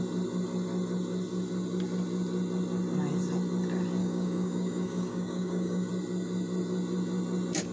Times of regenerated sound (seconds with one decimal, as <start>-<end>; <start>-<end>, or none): 4.0-5.9